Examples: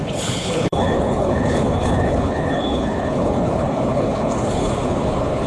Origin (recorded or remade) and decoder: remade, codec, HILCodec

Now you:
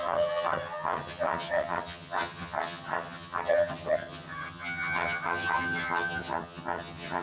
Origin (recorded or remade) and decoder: remade, vocoder, HiFi-GAN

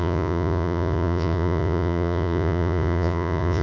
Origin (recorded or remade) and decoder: remade, vocoder, Vocos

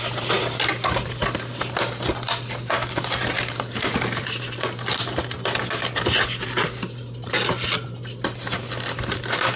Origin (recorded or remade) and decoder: recorded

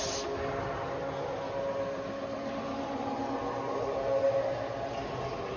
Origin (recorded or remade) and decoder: recorded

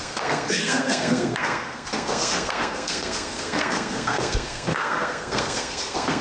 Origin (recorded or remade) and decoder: remade, codec, SNAC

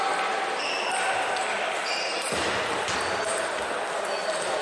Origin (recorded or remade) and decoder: recorded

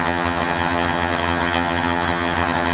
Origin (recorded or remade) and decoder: remade, vocoder, HiFi-GAN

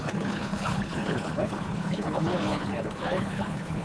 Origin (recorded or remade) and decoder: remade, codec, HILCodec